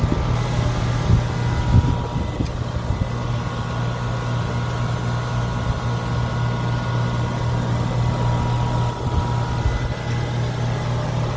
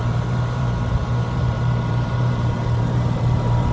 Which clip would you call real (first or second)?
first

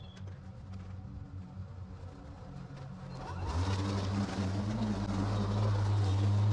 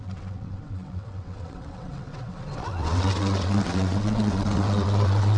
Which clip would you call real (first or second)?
first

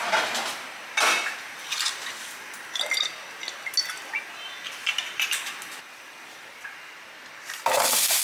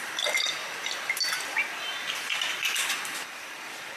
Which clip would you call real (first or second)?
first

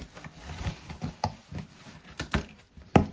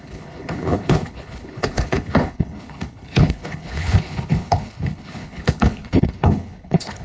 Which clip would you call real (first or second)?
first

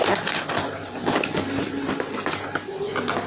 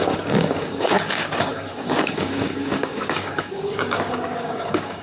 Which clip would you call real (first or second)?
first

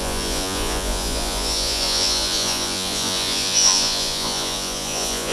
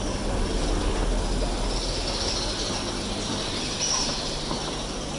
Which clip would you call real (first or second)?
second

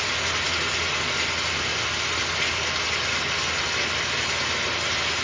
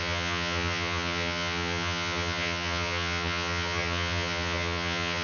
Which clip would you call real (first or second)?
first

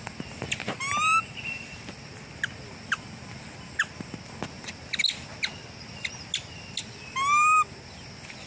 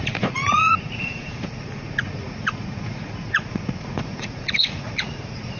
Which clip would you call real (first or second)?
first